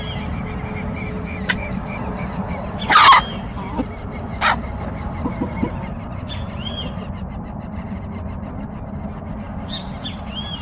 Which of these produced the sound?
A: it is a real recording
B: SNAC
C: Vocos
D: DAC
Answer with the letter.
A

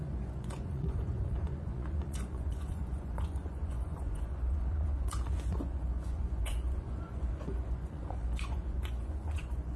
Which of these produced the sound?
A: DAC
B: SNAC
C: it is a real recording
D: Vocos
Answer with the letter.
D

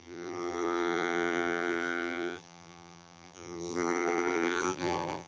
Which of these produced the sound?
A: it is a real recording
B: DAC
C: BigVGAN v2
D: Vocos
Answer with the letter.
C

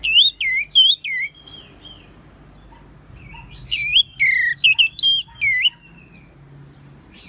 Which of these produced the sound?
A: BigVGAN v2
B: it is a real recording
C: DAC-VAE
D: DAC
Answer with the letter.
B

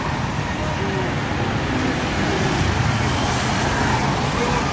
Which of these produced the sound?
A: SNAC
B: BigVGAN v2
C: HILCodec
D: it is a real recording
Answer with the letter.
D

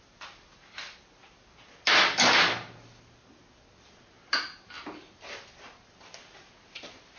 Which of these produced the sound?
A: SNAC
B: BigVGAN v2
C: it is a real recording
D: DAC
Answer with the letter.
C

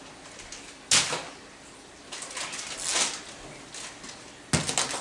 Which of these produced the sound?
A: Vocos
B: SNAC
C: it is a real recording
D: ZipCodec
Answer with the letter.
C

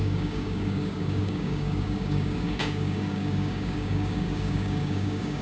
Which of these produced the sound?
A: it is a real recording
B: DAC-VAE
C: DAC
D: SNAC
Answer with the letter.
C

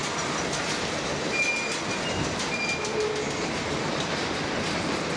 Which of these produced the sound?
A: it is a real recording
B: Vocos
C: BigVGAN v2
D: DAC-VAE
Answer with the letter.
A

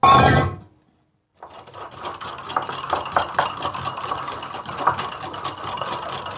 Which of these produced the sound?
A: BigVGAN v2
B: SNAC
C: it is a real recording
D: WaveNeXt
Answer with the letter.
C